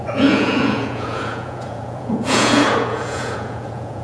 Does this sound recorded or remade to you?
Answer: remade